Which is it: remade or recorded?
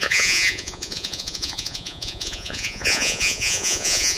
remade